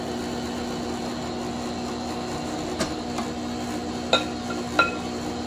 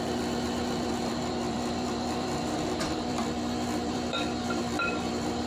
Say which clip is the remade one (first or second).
second